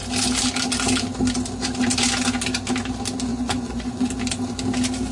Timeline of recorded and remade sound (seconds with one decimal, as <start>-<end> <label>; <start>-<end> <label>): 0.0-3.3 recorded; 3.3-4.1 remade; 4.1-5.1 recorded